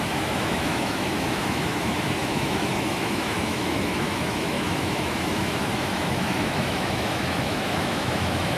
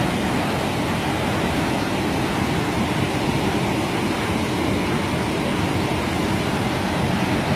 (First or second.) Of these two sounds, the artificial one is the first